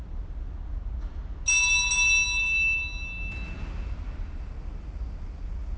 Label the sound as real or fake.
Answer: real